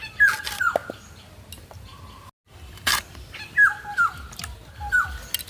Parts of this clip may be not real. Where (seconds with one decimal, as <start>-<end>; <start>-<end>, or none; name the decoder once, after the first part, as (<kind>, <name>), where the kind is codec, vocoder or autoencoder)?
none